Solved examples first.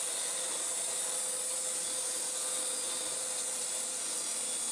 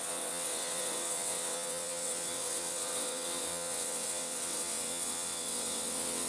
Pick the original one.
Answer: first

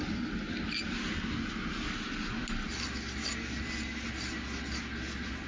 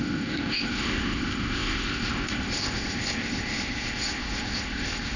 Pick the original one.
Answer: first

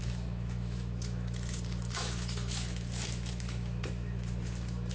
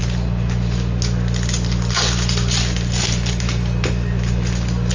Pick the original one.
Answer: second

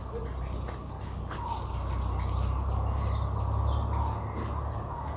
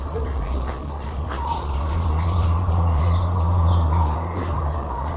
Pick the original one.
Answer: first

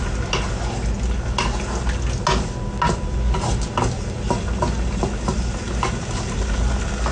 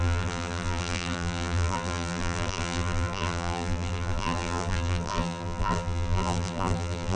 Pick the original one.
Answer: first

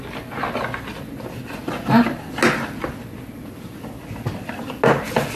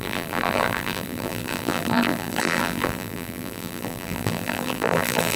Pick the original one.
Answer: first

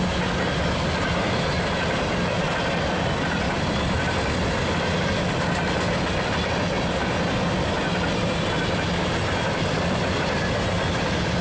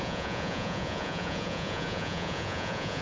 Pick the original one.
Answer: first